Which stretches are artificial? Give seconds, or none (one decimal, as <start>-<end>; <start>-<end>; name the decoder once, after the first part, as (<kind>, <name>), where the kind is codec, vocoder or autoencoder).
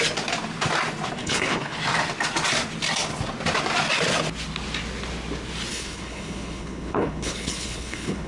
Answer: 1.2-1.8 (codec, HILCodec); 5.7-8.3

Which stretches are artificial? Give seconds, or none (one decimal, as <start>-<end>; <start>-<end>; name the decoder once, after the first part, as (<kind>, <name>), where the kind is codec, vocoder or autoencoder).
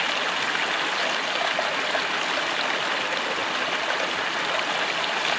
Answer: none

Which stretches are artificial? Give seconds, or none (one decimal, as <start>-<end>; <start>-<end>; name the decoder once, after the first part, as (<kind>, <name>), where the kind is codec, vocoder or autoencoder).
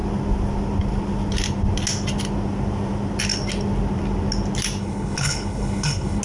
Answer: 4.8-6.2 (codec, HILCodec)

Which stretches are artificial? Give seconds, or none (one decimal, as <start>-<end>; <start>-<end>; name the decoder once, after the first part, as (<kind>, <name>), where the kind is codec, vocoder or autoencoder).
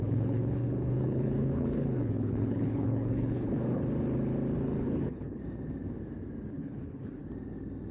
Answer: 0.0-3.8 (codec, HILCodec); 4.8-5.4; 6.5-7.2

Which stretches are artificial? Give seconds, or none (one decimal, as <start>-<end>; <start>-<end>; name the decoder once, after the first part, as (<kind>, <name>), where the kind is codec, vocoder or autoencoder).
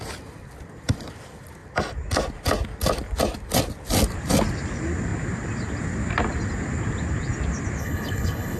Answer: 7.8-8.6 (codec, HILCodec)